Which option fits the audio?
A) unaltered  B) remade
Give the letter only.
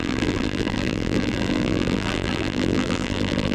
B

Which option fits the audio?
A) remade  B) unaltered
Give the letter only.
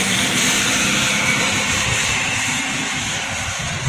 A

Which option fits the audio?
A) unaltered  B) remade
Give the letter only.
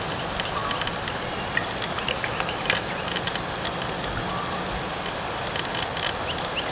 A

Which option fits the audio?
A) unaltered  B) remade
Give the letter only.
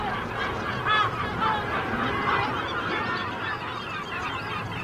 A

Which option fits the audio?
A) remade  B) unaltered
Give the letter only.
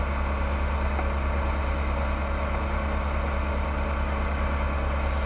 B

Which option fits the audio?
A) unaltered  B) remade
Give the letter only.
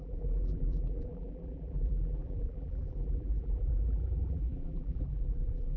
B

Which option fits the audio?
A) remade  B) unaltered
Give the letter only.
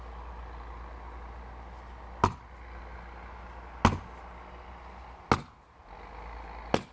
B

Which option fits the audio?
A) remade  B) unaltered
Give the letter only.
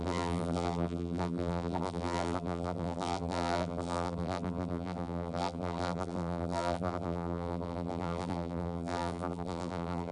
A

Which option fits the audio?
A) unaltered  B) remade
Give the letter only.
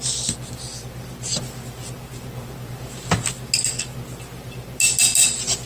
A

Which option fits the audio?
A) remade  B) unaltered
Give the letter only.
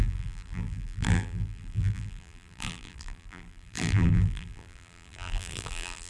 A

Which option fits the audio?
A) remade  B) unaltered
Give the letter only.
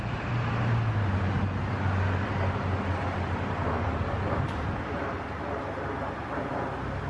B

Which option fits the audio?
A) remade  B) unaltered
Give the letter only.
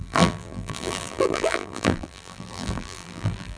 A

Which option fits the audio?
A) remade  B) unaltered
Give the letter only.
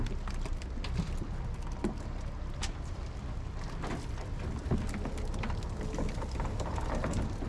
B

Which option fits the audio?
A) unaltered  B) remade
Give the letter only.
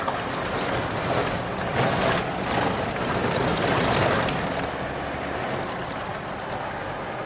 A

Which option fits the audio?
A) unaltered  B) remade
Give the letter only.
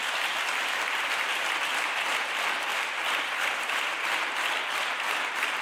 B